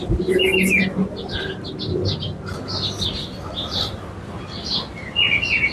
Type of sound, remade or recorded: recorded